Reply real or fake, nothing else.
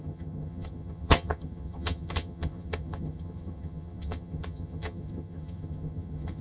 fake